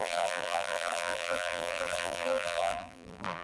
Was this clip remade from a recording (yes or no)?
yes